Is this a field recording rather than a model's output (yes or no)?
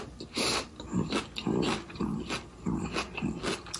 yes